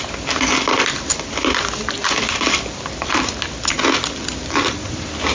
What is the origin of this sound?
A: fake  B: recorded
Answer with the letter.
A